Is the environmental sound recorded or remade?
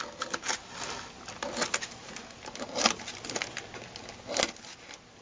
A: recorded